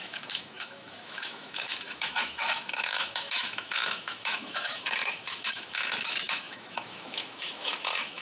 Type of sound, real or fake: fake